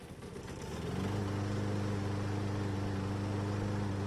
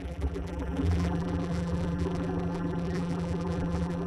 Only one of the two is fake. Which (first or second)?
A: second